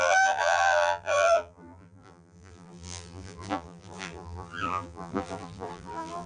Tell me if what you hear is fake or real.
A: fake